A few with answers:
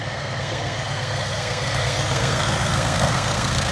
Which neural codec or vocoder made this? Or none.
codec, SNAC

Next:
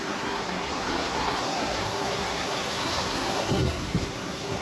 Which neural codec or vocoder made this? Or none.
codec, SNAC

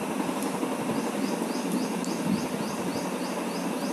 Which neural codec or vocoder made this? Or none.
none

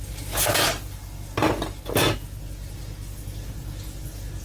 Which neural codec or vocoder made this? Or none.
none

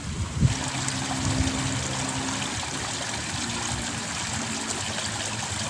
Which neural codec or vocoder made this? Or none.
none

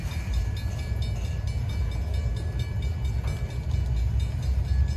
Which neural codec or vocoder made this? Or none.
none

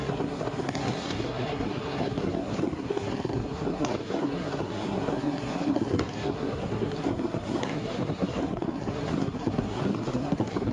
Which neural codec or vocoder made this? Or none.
codec, SNAC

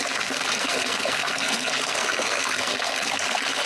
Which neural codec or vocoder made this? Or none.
codec, SNAC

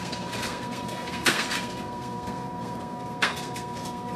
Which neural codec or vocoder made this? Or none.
codec, SNAC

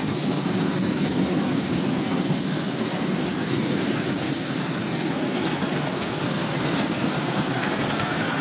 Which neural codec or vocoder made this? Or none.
codec, SNAC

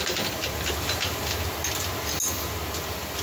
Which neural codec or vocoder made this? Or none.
none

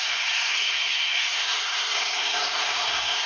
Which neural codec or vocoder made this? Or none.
codec, SNAC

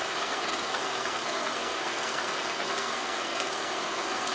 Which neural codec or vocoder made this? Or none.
codec, SNAC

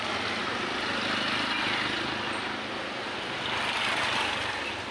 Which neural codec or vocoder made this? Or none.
none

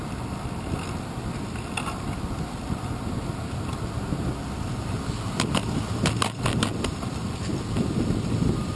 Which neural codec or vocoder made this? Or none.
none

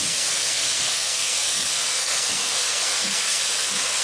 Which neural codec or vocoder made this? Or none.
codec, SNAC